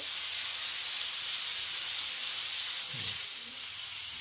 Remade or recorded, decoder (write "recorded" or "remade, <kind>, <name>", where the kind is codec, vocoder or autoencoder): recorded